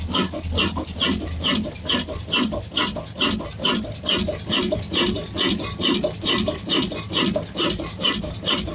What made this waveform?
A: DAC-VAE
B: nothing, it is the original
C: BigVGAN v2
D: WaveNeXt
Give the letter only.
B